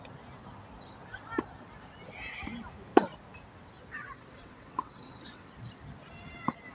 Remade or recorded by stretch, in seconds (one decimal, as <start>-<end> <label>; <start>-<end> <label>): 0.0-3.9 recorded; 3.9-5.5 remade; 5.5-6.7 recorded